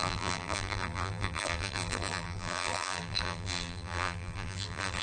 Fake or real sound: fake